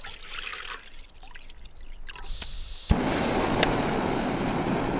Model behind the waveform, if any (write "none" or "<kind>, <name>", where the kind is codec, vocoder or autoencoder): none